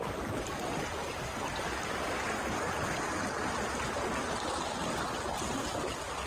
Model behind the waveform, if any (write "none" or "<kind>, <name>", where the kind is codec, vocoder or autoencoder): none